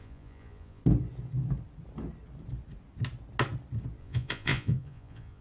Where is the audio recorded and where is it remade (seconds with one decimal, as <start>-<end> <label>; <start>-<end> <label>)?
0.0-0.8 remade; 0.8-4.0 recorded; 4.0-5.4 remade